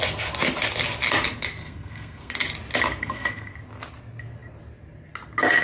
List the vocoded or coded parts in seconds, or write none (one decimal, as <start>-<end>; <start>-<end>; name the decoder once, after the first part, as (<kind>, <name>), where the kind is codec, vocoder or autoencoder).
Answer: 1.6-2.3 (codec, SNAC); 3.0-3.5